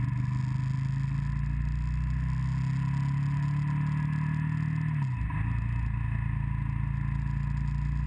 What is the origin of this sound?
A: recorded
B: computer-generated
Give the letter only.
A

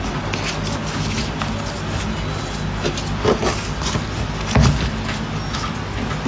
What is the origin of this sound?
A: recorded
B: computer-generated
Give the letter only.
A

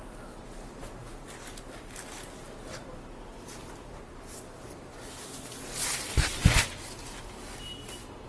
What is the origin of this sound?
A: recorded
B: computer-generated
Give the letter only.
A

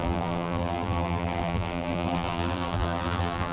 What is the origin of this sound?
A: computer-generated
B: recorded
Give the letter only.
A